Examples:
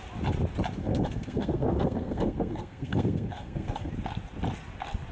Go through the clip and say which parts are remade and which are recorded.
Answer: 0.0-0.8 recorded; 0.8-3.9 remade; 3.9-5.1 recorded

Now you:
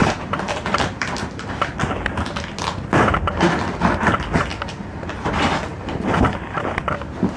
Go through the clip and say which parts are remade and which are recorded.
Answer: 0.0-1.8 remade; 1.8-4.5 recorded; 4.5-5.3 remade; 5.3-5.7 recorded; 5.7-6.6 remade; 6.6-7.4 recorded

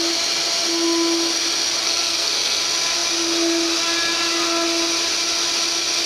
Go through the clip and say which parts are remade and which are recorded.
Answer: 0.0-1.8 recorded; 1.8-2.6 remade; 2.6-6.1 recorded